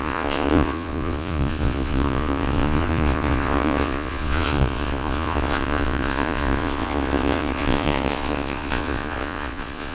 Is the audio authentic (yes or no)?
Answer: no